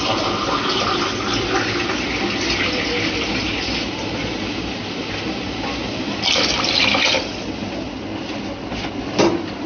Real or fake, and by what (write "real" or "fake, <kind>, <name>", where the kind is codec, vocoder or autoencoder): real